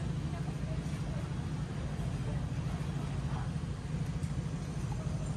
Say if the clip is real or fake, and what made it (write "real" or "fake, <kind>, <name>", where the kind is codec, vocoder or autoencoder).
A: real